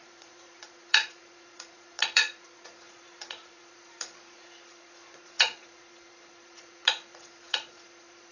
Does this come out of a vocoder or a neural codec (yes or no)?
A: yes